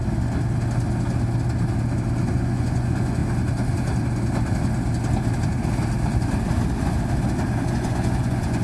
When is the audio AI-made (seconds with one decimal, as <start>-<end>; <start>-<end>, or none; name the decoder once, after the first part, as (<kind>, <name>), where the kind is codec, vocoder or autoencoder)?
2.3-3.2 (vocoder, Vocos); 7.7-8.6